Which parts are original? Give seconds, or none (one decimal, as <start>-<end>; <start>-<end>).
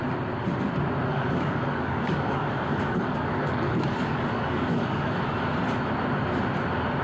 0.0-1.1; 5.3-7.0